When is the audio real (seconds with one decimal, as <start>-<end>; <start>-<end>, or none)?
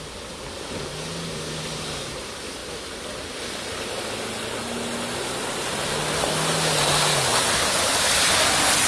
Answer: 0.0-8.9